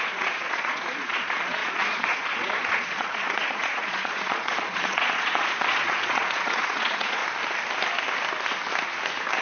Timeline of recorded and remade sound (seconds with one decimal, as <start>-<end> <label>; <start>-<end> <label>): 0.0-7.2 remade; 7.2-9.4 recorded